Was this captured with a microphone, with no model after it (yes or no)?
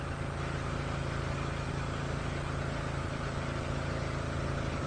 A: yes